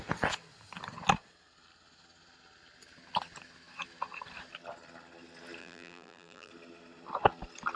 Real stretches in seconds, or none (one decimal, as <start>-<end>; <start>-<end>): 0.0-5.6; 6.5-7.8